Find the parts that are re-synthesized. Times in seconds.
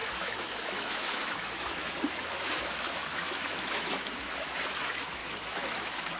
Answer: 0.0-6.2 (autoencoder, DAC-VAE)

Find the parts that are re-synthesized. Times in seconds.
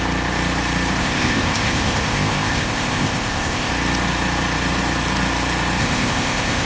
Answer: 1.0-3.7 (codec, ZipCodec); 5.8-6.7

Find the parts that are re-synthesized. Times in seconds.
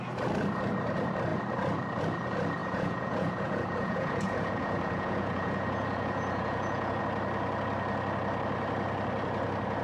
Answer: 2.6-7.0 (vocoder, Vocos)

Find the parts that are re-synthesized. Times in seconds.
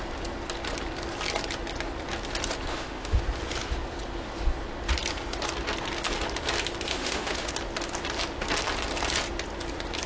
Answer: 2.7-3.2 (autoencoder, DAC-VAE); 6.9-7.5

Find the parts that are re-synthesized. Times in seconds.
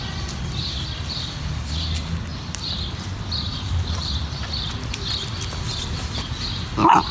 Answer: 2.3-5.0 (vocoder, BigVGAN v2)